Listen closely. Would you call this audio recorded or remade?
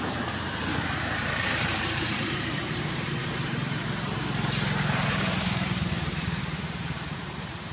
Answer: remade